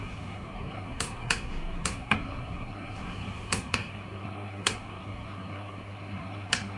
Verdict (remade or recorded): remade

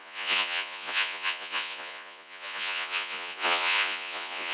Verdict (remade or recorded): remade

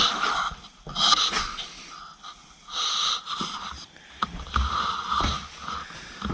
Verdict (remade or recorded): recorded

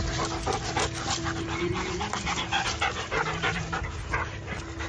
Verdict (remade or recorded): recorded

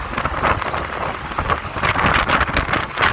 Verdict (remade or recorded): remade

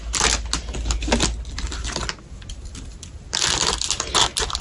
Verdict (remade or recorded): recorded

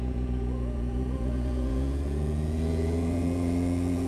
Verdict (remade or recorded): remade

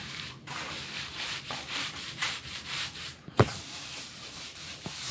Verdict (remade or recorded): remade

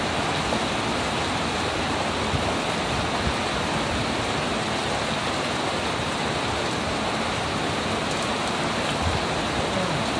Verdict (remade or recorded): recorded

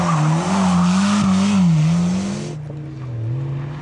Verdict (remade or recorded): recorded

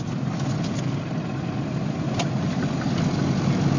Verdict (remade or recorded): recorded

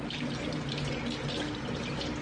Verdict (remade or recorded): recorded